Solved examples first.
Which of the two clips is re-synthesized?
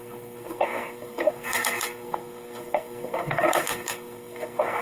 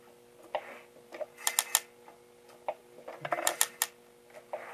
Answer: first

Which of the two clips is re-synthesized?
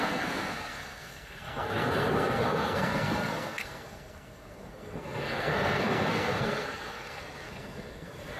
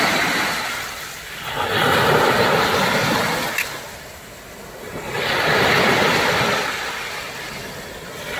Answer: first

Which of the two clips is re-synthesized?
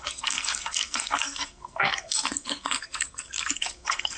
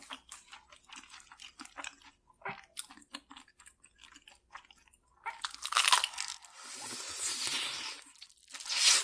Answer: first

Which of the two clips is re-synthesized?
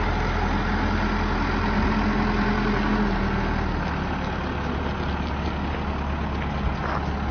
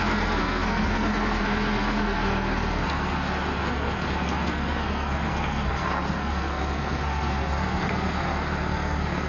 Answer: second